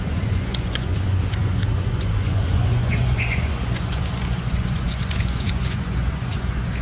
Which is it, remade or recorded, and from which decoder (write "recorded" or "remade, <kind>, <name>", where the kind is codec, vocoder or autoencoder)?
remade, vocoder, Vocos